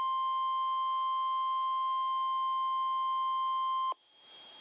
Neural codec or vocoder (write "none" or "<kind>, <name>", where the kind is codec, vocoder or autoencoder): none